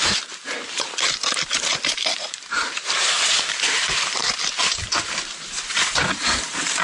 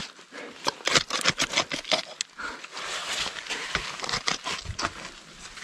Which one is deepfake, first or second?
first